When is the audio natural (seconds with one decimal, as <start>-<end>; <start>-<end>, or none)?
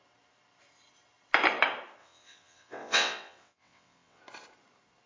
0.0-2.0; 4.2-5.1